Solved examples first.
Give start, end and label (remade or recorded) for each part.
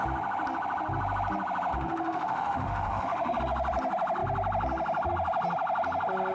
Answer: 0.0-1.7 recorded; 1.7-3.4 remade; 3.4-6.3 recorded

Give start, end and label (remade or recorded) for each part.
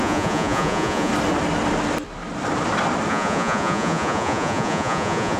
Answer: 0.0-1.1 remade; 1.1-3.1 recorded; 3.1-5.4 remade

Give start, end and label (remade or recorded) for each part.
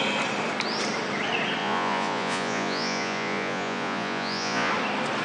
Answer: 0.0-1.6 recorded; 1.6-4.7 remade; 4.7-5.2 recorded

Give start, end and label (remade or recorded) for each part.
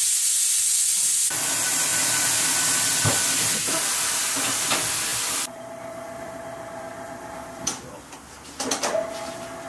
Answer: 0.0-5.1 recorded; 5.1-7.8 remade; 7.8-9.7 recorded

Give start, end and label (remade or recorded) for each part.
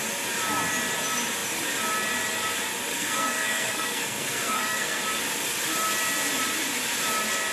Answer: 0.0-2.9 recorded; 2.9-5.0 remade; 5.0-7.5 recorded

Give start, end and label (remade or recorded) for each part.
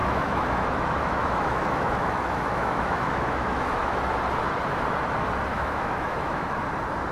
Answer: 0.0-4.0 remade; 4.0-5.5 recorded; 5.5-6.6 remade; 6.6-7.1 recorded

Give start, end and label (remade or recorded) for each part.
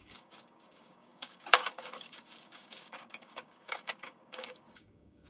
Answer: 0.0-5.3 remade